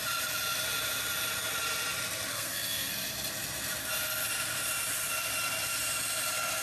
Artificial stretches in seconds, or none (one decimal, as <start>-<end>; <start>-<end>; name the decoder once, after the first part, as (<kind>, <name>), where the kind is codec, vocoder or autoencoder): 2.3-2.9 (codec, SNAC)